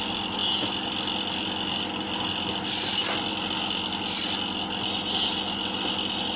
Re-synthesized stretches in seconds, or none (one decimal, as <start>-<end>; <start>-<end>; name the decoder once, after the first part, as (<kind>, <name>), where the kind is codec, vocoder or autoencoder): none